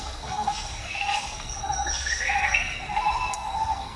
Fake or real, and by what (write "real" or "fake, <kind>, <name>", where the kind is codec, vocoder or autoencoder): fake, codec, SNAC